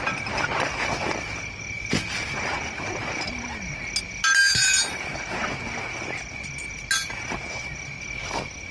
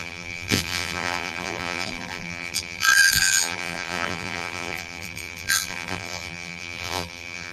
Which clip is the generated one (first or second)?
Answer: second